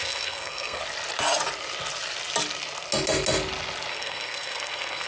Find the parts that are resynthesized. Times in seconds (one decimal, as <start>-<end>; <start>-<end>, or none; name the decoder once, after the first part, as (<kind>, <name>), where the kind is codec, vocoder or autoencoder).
0.0-0.8 (codec, SNAC); 3.9-5.1